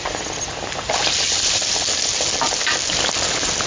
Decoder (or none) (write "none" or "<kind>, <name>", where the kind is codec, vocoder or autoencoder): none